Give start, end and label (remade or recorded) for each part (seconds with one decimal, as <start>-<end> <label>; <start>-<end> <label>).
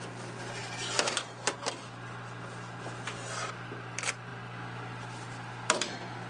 0.0-0.6 remade; 0.6-3.0 recorded; 3.0-6.3 remade